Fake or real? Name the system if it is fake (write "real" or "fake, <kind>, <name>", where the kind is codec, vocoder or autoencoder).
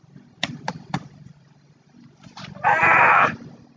fake, vocoder, BigVGAN v2